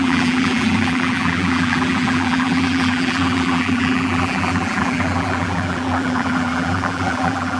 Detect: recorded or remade remade